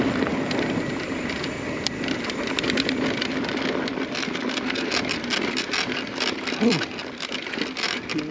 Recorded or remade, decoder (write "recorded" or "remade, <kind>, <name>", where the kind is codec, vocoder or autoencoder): remade, vocoder, BigVGAN v2